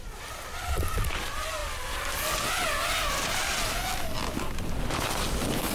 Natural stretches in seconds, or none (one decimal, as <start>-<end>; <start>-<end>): 0.0-5.7